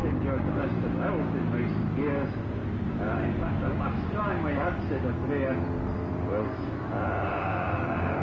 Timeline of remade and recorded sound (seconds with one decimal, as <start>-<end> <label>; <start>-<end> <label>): 0.0-8.2 recorded